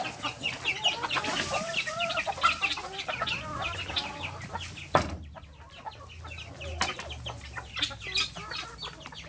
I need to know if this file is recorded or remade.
recorded